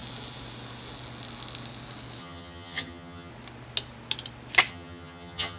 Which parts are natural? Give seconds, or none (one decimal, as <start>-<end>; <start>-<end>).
0.0-2.2; 3.3-4.7